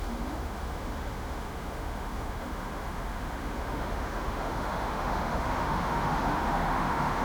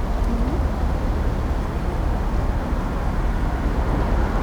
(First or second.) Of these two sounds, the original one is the second